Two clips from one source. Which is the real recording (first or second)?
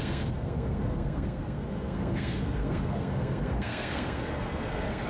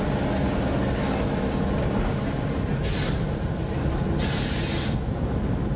second